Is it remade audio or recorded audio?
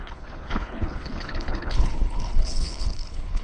remade